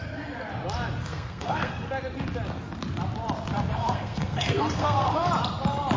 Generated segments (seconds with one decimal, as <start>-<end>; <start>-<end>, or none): 1.0-1.9; 3.7-5.3